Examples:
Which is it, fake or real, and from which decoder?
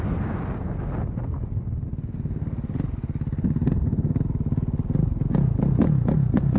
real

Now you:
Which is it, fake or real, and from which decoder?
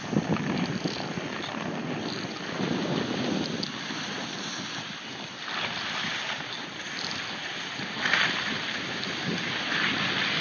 fake, vocoder, BigVGAN v2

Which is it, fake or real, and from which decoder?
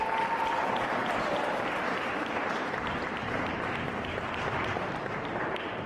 real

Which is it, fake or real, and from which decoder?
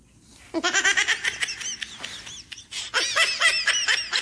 real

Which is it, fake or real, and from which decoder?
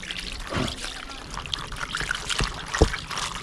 real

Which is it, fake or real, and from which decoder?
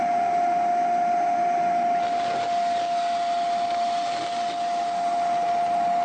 real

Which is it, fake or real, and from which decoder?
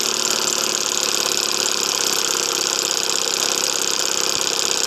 real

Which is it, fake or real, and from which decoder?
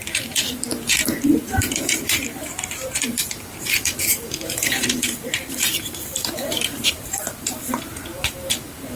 fake, vocoder, BigVGAN v2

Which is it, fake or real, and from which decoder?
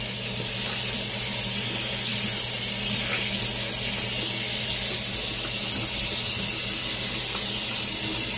real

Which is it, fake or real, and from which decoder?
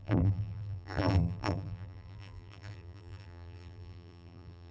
fake, vocoder, BigVGAN v2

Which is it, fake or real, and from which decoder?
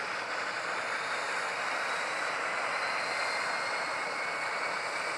fake, vocoder, BigVGAN v2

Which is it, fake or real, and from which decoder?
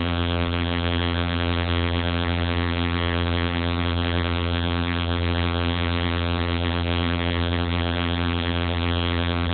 fake, vocoder, BigVGAN v2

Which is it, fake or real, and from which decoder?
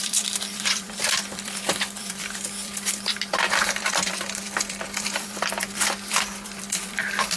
fake, vocoder, BigVGAN v2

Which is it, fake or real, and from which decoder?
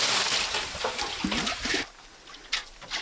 real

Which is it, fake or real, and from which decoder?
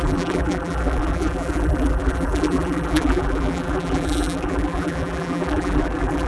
fake, vocoder, BigVGAN v2